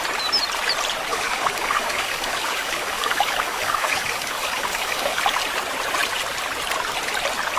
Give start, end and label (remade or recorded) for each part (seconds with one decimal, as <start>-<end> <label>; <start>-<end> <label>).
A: 0.0-1.1 recorded; 1.1-5.2 remade; 5.2-7.6 recorded